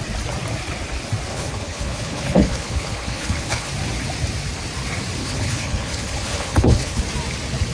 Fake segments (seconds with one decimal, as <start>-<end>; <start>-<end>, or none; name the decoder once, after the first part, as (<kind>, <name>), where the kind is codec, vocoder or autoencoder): 1.3-3.7 (codec, HILCodec); 5.2-7.0